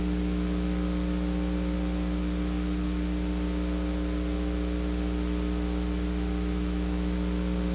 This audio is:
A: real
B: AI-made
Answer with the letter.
A